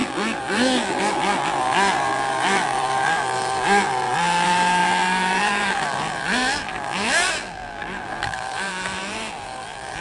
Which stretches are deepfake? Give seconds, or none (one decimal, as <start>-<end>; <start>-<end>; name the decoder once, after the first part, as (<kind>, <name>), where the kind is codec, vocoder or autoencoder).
0.0-10.0 (vocoder, BigVGAN v2)